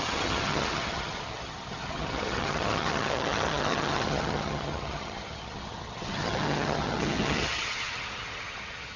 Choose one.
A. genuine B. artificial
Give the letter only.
B